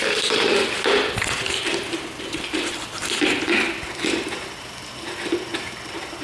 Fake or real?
real